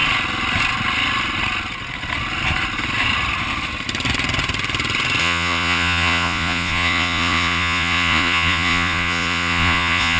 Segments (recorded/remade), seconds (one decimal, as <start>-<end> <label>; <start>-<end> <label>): 0.0-5.2 recorded; 5.2-10.2 remade